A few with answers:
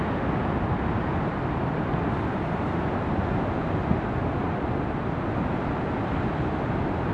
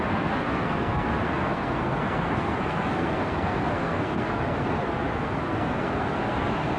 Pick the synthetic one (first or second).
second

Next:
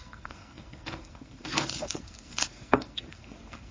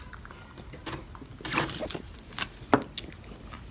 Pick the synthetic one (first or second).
first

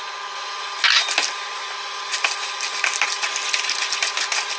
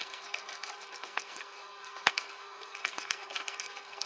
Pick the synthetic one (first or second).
second